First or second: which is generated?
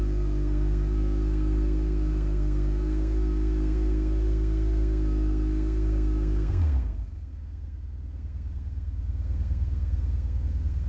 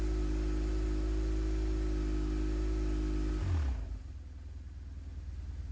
first